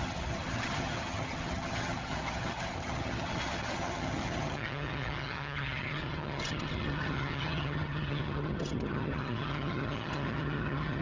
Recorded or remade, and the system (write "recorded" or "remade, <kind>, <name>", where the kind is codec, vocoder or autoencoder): remade, vocoder, HiFi-GAN